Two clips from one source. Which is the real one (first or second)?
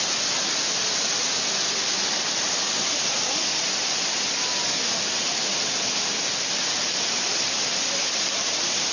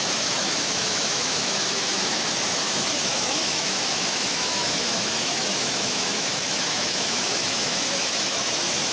first